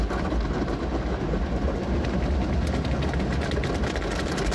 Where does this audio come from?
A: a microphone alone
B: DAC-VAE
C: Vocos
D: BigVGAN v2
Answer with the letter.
A